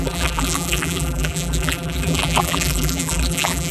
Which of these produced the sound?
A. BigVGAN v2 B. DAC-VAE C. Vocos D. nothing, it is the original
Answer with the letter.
A